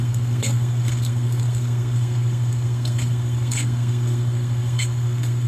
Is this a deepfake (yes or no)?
yes